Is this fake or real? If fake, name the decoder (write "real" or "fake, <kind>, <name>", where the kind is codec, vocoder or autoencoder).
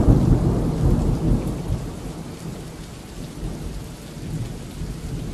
real